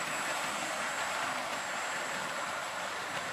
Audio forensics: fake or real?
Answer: fake